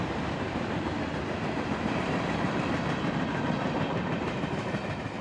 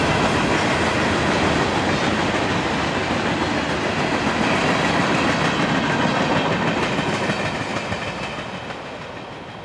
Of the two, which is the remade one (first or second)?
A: first